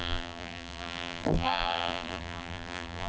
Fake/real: fake